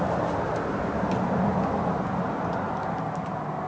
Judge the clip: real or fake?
real